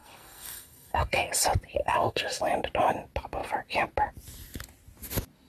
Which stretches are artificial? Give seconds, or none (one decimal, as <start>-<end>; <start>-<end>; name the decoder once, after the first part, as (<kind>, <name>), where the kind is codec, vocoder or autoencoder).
0.0-1.3 (codec, SNAC); 1.8-2.4